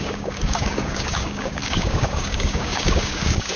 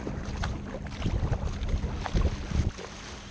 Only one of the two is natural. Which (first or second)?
second